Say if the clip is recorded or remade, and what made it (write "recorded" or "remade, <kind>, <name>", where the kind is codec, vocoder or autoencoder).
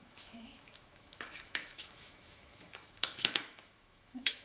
remade, autoencoder, DAC-VAE